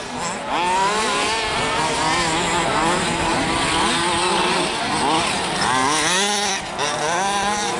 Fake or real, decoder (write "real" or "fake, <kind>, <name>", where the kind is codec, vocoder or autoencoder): real